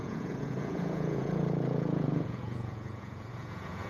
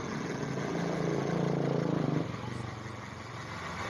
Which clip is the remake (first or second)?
first